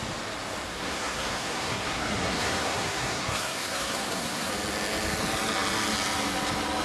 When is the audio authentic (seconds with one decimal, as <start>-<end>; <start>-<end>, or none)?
0.0-0.7; 4.5-6.8